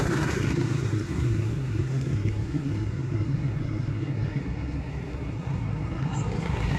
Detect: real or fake fake